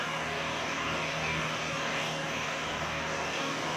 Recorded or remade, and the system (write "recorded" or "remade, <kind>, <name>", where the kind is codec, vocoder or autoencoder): remade, codec, DAC